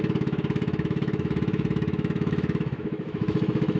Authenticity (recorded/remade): remade